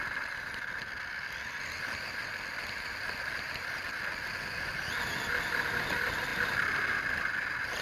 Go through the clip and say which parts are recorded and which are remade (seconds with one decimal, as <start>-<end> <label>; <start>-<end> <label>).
0.0-7.8 recorded